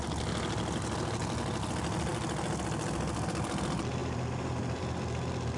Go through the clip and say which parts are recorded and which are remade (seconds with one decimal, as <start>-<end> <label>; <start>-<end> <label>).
0.0-5.6 recorded